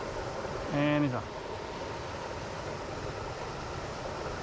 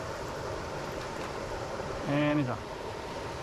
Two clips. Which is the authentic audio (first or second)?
first